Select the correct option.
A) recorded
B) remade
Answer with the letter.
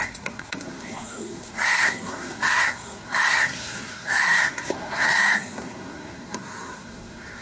B